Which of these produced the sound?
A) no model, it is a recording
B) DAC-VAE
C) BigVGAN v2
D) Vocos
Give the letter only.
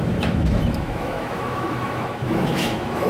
B